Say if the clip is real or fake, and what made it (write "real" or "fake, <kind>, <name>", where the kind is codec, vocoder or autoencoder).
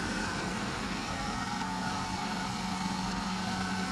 fake, codec, SNAC